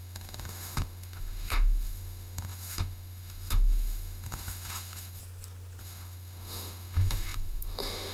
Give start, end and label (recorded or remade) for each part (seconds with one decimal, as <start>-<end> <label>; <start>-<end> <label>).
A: 0.0-5.2 remade; 5.2-5.8 recorded; 5.8-8.1 remade